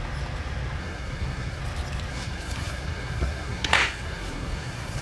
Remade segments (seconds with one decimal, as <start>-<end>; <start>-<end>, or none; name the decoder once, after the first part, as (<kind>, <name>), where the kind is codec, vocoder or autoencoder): 0.8-1.6 (codec, SNAC); 2.1-5.0